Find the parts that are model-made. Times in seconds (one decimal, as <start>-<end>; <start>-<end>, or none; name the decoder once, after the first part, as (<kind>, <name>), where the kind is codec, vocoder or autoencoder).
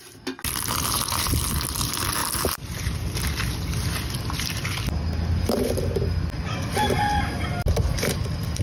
none